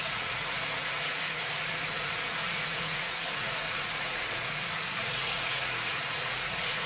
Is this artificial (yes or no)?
yes